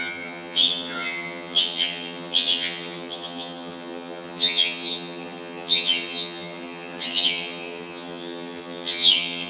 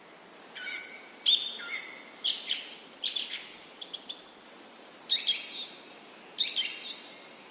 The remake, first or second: first